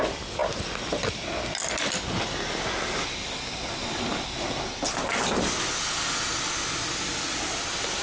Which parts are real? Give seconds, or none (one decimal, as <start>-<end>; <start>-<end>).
0.0-8.0